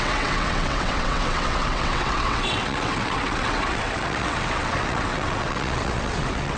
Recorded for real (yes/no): no